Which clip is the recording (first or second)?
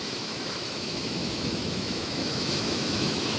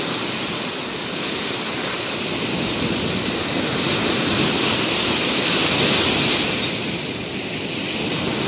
second